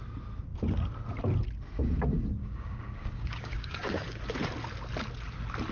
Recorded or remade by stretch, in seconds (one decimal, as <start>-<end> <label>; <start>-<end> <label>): 0.0-2.4 recorded; 2.4-4.2 remade; 4.2-5.7 recorded